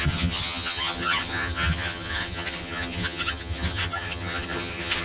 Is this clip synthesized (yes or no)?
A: yes